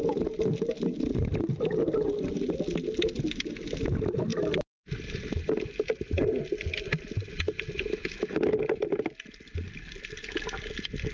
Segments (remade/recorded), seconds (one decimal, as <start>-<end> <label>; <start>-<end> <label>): 0.0-11.1 recorded